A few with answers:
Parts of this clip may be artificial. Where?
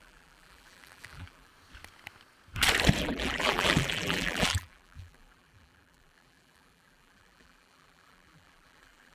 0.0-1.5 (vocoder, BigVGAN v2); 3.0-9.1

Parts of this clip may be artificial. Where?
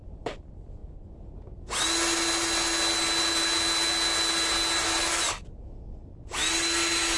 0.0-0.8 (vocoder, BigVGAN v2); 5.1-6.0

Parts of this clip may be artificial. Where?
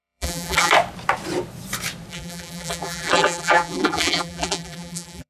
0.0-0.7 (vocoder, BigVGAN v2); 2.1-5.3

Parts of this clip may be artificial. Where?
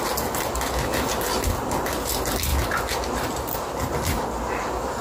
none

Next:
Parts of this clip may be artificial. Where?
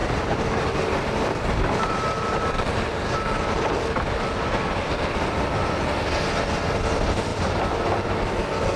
0.0-3.9 (vocoder, BigVGAN v2); 7.3-8.3